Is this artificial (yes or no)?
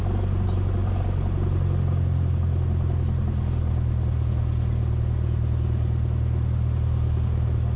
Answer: no